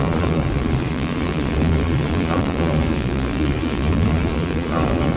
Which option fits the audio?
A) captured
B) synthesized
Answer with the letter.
B